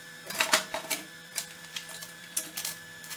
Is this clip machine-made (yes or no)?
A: yes